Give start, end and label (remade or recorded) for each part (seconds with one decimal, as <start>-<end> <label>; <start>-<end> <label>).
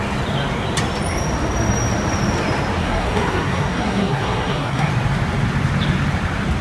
0.0-2.8 recorded; 2.8-4.9 remade; 4.9-6.6 recorded